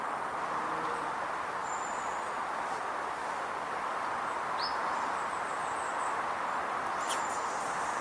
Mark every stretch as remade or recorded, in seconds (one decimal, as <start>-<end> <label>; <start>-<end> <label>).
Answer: 0.0-8.0 recorded